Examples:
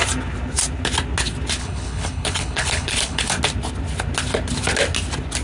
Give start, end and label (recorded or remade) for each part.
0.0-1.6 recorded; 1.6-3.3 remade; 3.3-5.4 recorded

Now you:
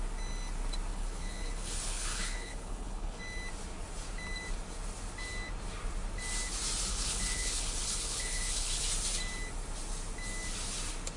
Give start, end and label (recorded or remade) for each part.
0.0-0.9 recorded; 0.9-3.2 remade; 3.2-6.9 recorded; 6.9-8.8 remade; 8.8-11.2 recorded

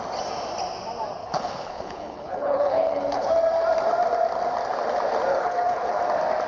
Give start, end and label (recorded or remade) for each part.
0.0-1.2 recorded; 1.2-3.3 remade; 3.3-5.3 recorded; 5.3-6.0 remade; 6.0-6.5 recorded

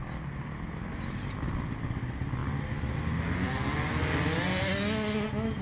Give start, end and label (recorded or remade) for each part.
0.0-5.6 recorded